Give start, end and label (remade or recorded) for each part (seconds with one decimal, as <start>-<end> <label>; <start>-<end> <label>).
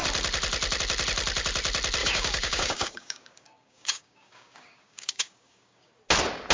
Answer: 0.0-2.0 recorded; 2.0-5.9 remade; 5.9-6.5 recorded